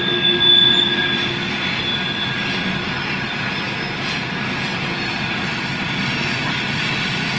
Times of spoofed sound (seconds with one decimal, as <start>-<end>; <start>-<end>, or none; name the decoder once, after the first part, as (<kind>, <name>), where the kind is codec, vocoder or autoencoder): none